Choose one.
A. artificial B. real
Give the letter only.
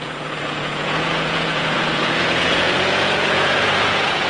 A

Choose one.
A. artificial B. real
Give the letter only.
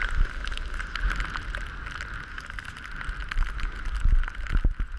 B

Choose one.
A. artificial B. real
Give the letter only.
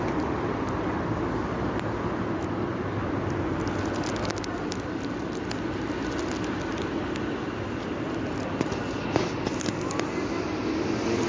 B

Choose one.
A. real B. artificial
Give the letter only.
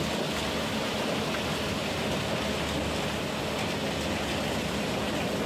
A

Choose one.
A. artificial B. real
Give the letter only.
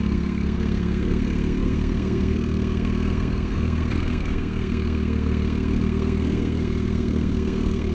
A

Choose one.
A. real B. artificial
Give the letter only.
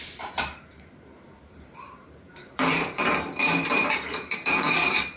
B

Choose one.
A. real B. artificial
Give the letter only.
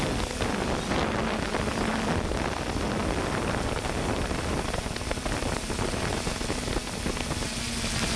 A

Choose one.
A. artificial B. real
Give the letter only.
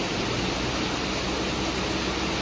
B